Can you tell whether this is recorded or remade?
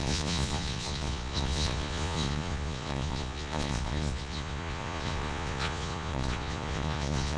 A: remade